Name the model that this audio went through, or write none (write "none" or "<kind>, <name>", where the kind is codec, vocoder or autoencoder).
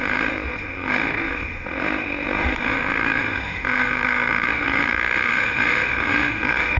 autoencoder, DAC-VAE